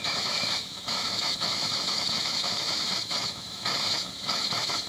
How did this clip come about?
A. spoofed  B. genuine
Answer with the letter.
A